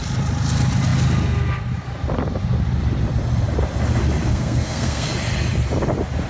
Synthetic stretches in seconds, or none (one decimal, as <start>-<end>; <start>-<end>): 4.3-5.1